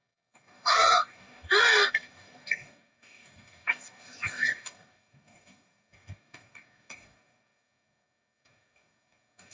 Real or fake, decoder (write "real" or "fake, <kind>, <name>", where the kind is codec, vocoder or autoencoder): fake, codec, DAC